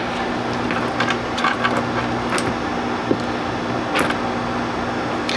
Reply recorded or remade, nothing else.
recorded